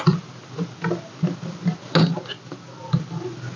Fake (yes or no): no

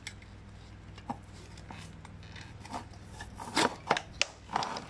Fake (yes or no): no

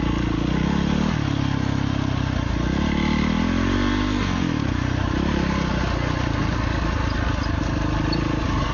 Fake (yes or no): no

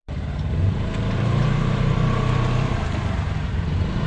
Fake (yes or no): yes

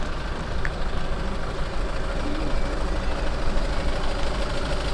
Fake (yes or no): no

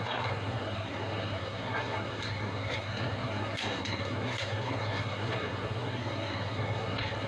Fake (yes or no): yes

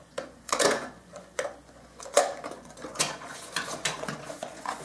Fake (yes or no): yes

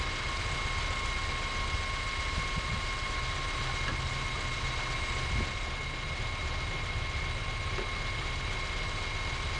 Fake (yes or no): no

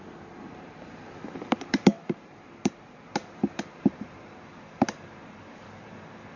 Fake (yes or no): yes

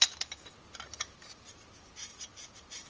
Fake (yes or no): no